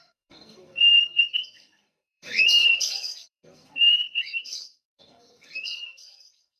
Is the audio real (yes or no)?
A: no